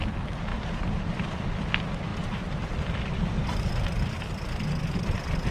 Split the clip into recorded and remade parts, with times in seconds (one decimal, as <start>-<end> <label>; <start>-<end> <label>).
0.0-0.5 recorded; 0.5-1.4 remade; 1.4-2.1 recorded; 2.1-4.1 remade; 4.1-5.5 recorded

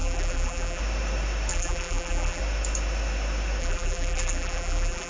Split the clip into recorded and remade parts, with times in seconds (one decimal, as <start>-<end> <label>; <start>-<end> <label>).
0.0-0.8 remade; 0.8-1.5 recorded; 1.5-2.4 remade; 2.4-3.6 recorded; 3.6-5.1 remade

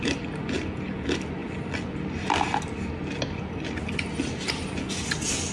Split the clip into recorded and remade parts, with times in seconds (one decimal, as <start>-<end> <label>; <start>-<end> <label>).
0.0-5.5 recorded